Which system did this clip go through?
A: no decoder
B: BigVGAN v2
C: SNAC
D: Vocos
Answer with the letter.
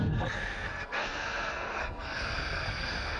C